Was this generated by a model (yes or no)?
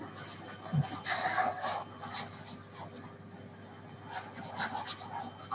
no